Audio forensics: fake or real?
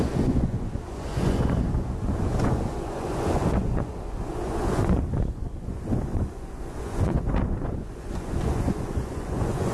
fake